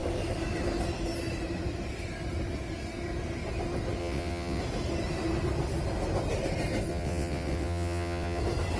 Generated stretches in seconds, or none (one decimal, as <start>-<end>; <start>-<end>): 4.0-4.6; 6.9-8.4